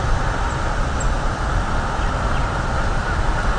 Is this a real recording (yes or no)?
yes